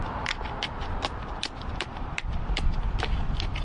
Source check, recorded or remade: remade